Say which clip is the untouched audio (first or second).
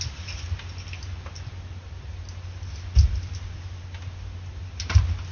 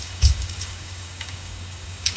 first